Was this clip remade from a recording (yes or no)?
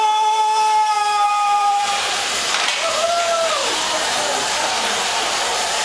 yes